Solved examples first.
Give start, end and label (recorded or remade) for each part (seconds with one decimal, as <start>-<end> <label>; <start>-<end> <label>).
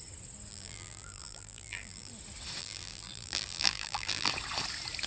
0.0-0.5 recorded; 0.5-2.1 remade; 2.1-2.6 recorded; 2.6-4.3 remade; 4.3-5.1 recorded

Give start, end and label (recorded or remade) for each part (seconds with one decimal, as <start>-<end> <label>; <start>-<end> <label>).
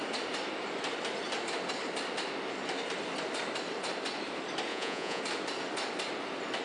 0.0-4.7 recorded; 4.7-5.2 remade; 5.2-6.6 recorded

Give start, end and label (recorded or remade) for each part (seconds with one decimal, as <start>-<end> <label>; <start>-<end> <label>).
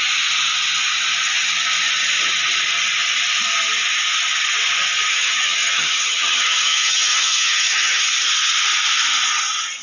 0.0-5.1 recorded; 5.1-8.0 remade; 8.0-9.8 recorded